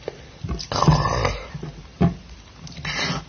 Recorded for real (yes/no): yes